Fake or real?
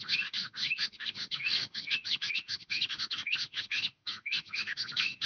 fake